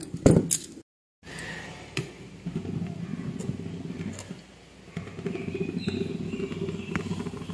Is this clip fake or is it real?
real